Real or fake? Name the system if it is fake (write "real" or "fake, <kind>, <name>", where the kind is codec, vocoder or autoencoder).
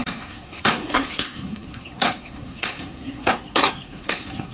fake, codec, SNAC